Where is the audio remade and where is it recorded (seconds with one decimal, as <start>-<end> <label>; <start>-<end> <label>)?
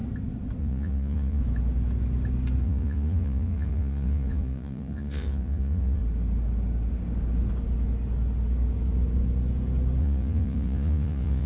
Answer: 0.0-0.6 recorded; 0.6-1.4 remade; 1.4-2.6 recorded; 2.6-6.0 remade; 6.0-10.0 recorded; 10.0-11.5 remade